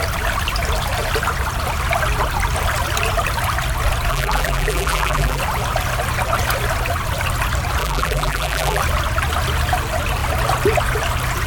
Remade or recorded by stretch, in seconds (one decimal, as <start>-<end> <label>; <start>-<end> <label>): 0.0-4.1 recorded; 4.1-5.4 remade; 5.4-7.8 recorded; 7.8-8.8 remade; 8.8-11.5 recorded